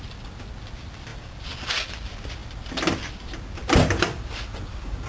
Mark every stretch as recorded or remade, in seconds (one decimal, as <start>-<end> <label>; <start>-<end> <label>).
0.0-5.1 recorded